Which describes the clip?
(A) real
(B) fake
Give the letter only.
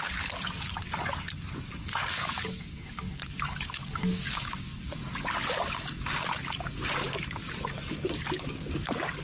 B